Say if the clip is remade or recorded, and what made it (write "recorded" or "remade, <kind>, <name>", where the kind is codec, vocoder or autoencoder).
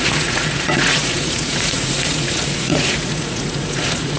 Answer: remade, vocoder, Vocos